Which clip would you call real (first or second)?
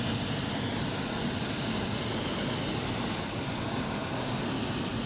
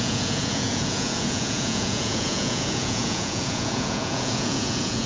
first